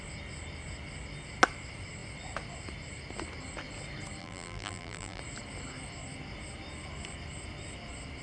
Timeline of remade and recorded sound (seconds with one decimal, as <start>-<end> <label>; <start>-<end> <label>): 0.0-4.2 recorded; 4.2-5.2 remade; 5.2-8.2 recorded